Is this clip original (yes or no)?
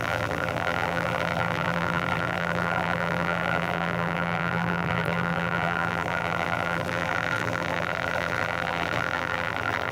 no